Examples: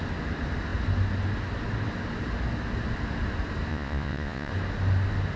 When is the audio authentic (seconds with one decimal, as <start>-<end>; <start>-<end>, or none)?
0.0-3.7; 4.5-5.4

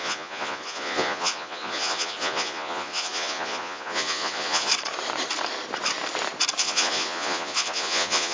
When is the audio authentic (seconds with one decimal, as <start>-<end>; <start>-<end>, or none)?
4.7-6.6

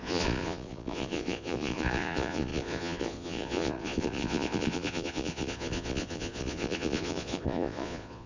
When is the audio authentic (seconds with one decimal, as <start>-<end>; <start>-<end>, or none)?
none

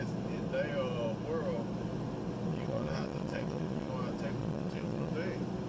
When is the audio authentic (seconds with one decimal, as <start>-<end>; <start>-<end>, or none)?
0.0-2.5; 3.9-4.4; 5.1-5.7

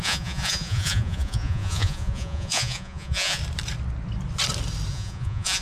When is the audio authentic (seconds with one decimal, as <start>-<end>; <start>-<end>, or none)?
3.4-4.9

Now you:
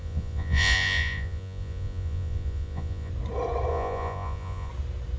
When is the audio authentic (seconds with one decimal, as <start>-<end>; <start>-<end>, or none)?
3.1-3.7; 4.7-5.2